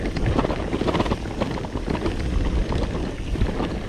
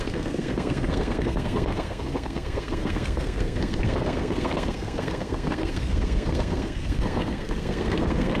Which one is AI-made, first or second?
second